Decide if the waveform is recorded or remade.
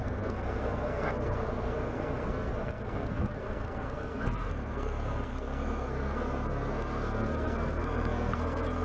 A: remade